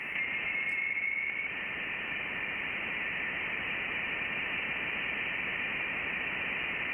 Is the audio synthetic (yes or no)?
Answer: no